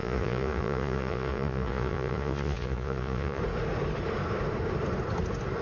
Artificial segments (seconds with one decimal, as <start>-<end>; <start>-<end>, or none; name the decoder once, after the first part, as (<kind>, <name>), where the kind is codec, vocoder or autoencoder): 0.0-3.4 (vocoder, Vocos)